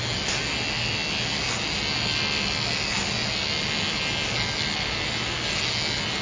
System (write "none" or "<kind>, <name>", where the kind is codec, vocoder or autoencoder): none